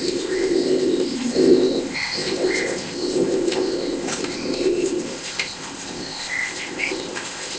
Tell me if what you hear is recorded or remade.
remade